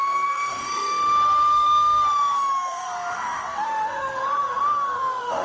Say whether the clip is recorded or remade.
remade